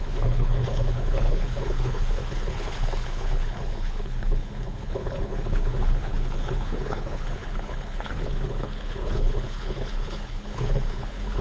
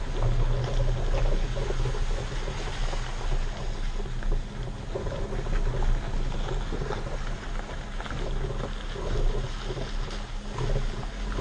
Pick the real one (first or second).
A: second